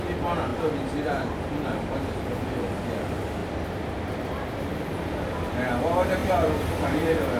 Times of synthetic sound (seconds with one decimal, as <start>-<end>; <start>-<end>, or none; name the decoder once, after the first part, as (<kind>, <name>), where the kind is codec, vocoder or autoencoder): 0.5-2.7 (vocoder, BigVGAN v2); 3.4-5.4; 6.2-7.4